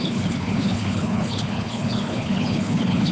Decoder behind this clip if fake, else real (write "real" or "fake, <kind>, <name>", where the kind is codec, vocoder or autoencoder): fake, codec, HILCodec